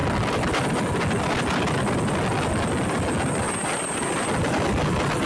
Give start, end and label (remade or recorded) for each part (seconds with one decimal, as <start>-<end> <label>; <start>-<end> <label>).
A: 0.0-5.3 recorded